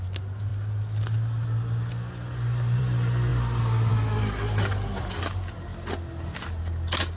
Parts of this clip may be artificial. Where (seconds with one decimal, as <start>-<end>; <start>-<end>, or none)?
none